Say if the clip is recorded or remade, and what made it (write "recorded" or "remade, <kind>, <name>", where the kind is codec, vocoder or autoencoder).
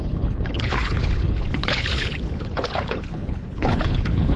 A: remade, codec, HILCodec